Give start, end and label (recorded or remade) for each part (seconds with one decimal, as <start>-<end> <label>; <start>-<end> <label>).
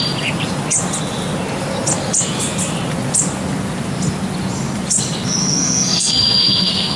0.0-5.4 recorded; 5.4-7.0 remade